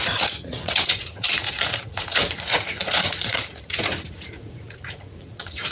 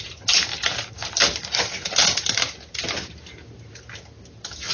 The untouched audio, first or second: second